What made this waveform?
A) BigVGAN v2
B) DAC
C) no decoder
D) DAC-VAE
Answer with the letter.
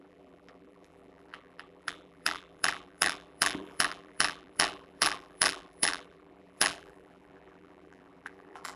A